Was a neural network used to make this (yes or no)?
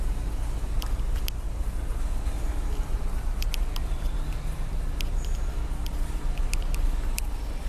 no